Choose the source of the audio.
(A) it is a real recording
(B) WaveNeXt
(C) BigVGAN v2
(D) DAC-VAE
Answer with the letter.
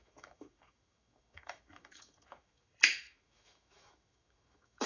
D